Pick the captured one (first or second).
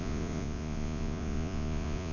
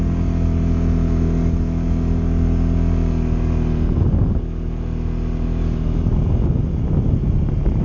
second